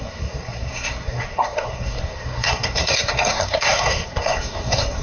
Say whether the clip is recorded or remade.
remade